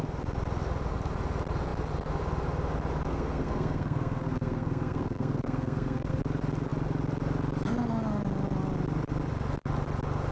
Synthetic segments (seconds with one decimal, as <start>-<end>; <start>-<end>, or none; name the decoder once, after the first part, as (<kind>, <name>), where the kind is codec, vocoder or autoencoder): 3.1-6.2 (codec, SNAC)